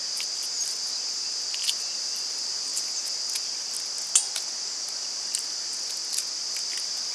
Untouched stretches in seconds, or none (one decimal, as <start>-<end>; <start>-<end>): 0.0-7.1